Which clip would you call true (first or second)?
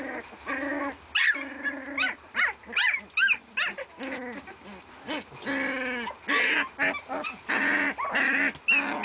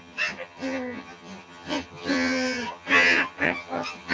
first